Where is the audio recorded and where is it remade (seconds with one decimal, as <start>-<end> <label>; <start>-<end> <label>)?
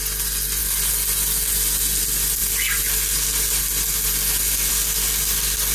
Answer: 0.0-5.7 recorded